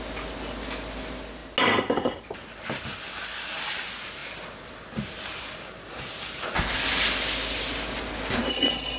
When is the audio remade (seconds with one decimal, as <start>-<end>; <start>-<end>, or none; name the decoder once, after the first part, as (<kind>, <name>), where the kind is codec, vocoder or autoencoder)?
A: 8.5-9.0 (codec, SNAC)